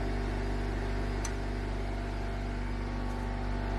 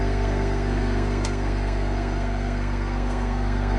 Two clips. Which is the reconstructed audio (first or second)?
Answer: second